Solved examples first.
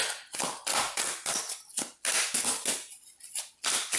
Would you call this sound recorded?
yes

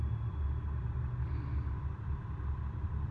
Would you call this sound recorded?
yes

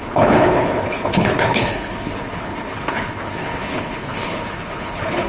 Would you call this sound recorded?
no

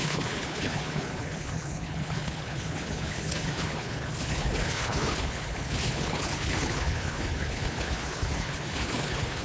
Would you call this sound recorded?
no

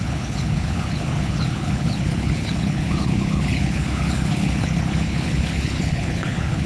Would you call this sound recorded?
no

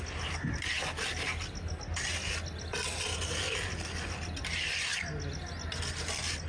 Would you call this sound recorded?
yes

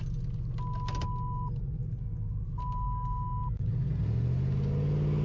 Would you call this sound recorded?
yes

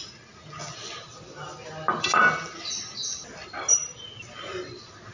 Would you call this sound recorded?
yes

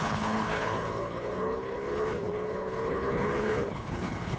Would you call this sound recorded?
no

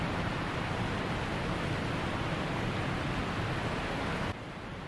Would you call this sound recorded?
yes